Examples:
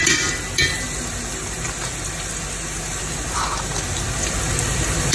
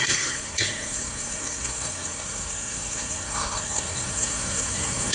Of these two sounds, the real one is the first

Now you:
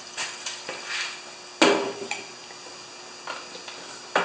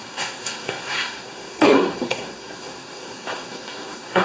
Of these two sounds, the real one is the first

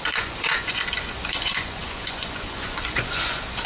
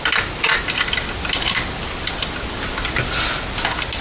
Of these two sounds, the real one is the second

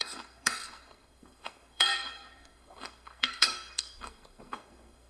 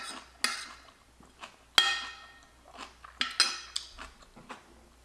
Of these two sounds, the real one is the second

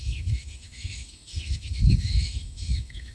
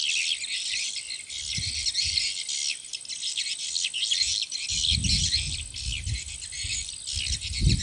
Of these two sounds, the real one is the second